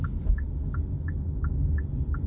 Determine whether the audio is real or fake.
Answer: real